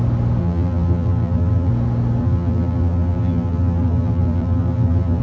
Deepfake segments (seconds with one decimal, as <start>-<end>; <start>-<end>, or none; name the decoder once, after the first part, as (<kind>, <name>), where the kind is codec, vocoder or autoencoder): 0.4-1.7 (vocoder, BigVGAN v2); 2.2-5.2